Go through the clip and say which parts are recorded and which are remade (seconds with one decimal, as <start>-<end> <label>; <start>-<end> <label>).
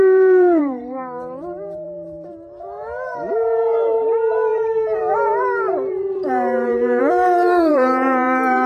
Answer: 0.0-8.7 remade